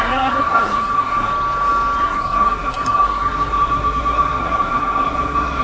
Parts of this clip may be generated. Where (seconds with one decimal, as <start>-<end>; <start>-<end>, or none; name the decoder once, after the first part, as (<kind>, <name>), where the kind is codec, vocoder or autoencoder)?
0.0-1.3 (codec, SNAC); 2.0-5.6